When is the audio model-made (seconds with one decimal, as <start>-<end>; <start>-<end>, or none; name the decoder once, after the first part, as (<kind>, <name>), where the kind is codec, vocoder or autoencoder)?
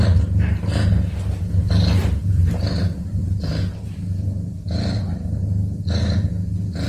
2.0-2.6 (vocoder, BigVGAN v2); 3.2-5.4